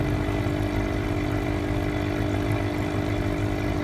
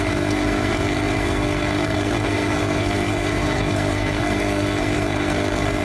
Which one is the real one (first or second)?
first